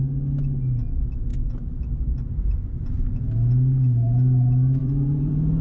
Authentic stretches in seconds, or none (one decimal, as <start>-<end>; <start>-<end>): 0.0-1.3; 3.0-4.8